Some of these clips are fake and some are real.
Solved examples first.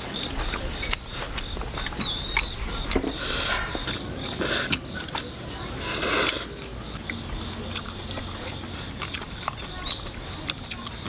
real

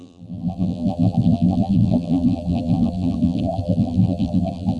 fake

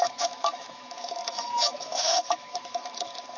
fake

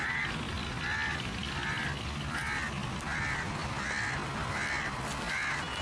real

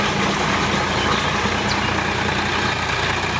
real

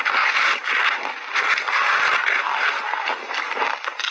real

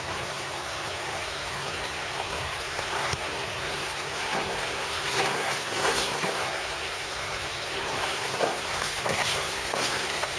fake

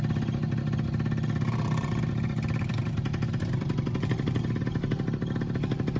real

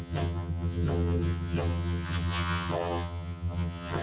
fake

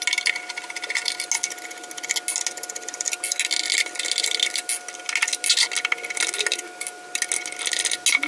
real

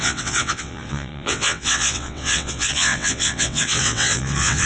fake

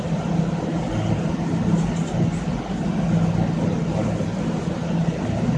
real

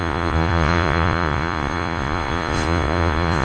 fake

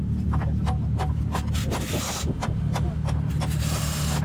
real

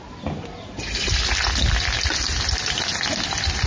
real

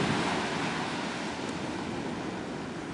real